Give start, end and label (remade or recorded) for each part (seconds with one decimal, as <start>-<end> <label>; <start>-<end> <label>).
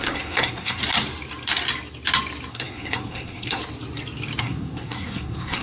0.0-0.8 remade; 0.8-2.5 recorded; 2.5-3.6 remade; 3.6-4.4 recorded; 4.4-5.6 remade